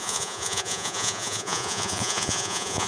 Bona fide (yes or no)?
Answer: no